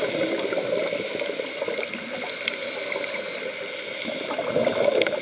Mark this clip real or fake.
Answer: real